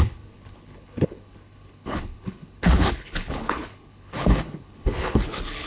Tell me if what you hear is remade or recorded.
remade